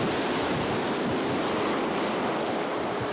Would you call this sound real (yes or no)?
yes